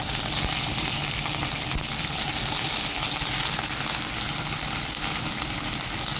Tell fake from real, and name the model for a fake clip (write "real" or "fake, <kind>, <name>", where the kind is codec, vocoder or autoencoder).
real